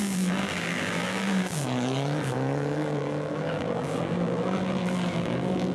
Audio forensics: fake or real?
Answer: fake